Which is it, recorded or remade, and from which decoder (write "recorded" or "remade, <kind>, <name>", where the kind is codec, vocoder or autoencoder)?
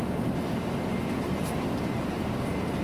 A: recorded